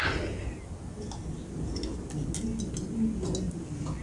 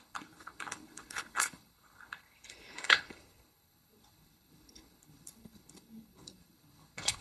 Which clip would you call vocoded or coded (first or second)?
second